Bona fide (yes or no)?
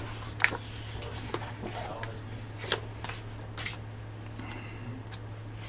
yes